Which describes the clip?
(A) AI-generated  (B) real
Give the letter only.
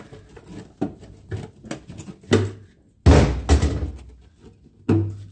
B